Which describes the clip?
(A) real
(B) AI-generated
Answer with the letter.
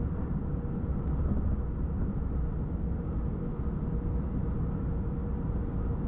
A